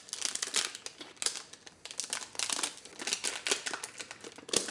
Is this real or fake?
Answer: real